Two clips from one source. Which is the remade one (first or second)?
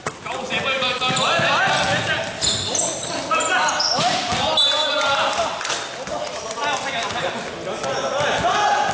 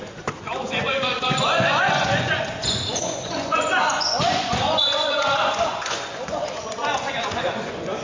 second